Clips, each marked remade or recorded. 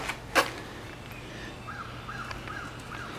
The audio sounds recorded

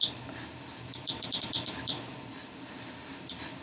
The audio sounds remade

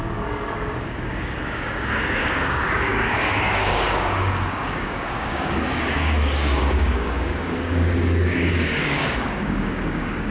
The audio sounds remade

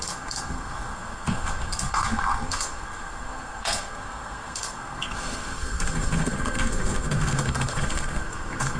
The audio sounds remade